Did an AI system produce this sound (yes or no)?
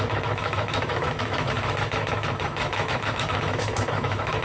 yes